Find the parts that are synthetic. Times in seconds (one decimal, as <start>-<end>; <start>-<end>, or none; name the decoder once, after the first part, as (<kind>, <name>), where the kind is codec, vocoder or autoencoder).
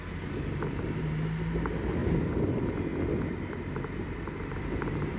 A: 0.0-1.0 (vocoder, BigVGAN v2); 2.0-5.2